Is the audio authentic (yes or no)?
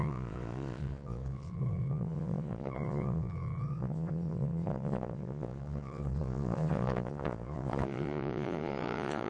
no